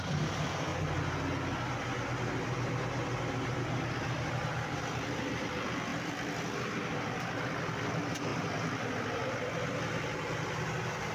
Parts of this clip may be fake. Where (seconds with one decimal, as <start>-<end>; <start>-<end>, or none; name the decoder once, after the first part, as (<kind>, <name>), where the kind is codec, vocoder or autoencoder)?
5.9-7.9 (vocoder, BigVGAN v2); 8.3-9.3